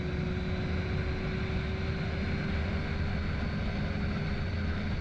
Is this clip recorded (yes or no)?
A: yes